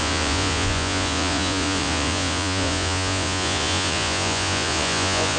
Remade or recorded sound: remade